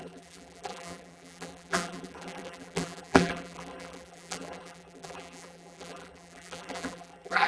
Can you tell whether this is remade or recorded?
remade